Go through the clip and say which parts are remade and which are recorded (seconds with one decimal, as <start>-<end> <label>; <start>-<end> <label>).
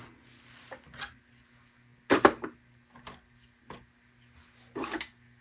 0.0-5.4 recorded